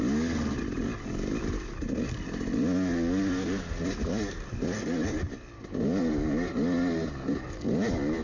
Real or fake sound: real